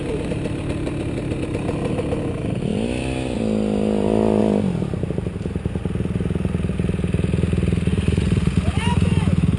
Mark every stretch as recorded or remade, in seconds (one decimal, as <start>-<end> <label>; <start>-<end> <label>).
0.0-7.9 recorded; 7.9-9.6 remade